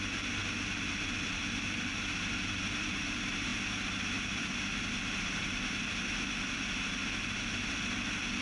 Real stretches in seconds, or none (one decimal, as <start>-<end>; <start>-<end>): 7.0-8.4